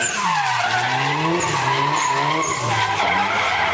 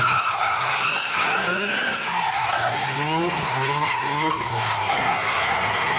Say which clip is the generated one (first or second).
second